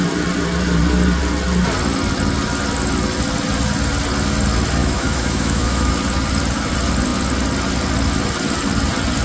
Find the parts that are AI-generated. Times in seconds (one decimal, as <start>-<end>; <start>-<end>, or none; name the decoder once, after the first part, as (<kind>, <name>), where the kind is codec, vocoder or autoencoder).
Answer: 4.8-5.9 (autoencoder, DAC-VAE)